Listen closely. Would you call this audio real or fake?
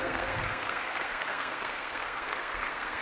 fake